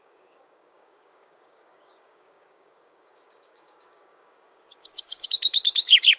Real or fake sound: fake